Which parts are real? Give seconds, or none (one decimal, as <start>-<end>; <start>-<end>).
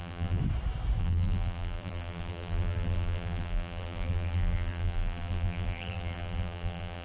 0.4-1.0